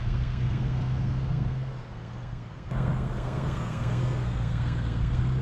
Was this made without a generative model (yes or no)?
no